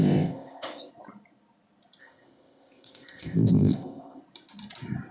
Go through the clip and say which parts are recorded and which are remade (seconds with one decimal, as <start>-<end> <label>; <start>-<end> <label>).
0.0-0.9 remade; 0.9-2.0 recorded; 2.0-4.2 remade; 4.2-5.1 recorded